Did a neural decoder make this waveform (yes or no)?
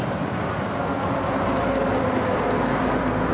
no